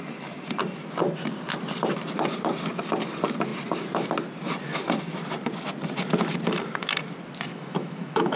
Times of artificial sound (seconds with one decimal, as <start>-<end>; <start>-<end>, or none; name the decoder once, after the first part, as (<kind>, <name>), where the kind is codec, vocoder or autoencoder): 7.5-8.4 (autoencoder, DAC-VAE)

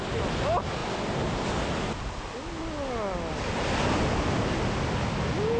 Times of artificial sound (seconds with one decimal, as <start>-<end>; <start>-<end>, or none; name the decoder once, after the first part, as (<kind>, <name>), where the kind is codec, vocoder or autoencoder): none

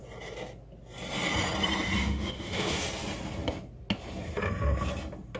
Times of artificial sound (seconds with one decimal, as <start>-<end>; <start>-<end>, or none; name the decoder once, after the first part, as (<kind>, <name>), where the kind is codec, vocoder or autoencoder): 2.0-2.8 (autoencoder, DAC-VAE)